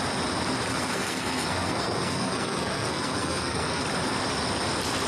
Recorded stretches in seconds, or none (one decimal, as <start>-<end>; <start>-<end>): 0.0-0.7; 3.8-5.1